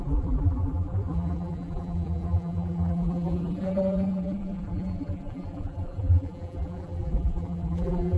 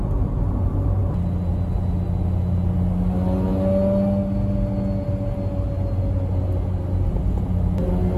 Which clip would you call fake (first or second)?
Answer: first